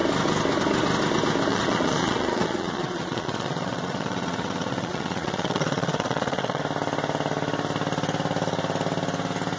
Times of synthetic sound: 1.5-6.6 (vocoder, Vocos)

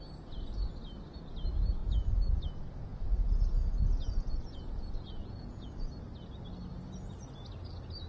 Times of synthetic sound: 1.8-2.4 (vocoder, Vocos); 2.9-5.7